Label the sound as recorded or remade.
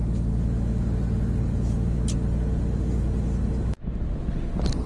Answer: recorded